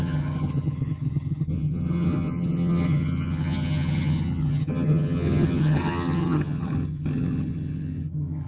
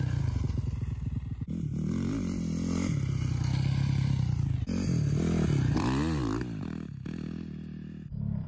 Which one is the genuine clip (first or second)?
second